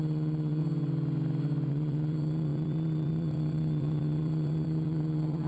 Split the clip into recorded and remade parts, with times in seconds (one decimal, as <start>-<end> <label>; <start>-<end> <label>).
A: 0.0-0.6 remade; 0.6-1.7 recorded; 1.7-5.5 remade